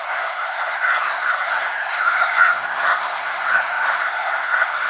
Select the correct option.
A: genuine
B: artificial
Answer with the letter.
B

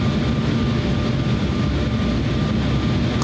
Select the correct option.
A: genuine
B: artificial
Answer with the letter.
A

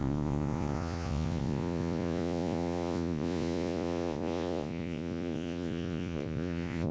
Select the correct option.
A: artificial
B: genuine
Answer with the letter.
A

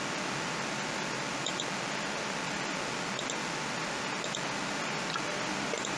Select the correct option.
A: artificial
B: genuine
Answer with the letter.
B